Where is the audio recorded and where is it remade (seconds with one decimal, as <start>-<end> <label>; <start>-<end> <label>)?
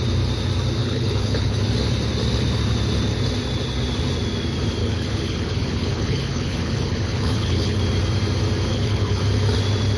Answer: 0.0-0.8 recorded; 0.8-1.6 remade; 1.6-4.8 recorded; 4.8-7.8 remade; 7.8-8.7 recorded; 8.7-9.2 remade; 9.2-10.0 recorded